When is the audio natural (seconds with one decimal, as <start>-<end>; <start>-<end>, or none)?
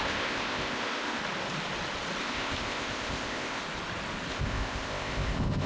1.2-2.2; 3.6-4.3